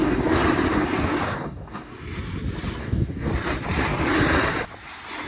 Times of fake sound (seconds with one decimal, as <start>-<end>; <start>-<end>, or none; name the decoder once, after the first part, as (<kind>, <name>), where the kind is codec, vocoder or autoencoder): 0.0-0.4 (codec, DAC); 1.0-1.9; 2.8-3.3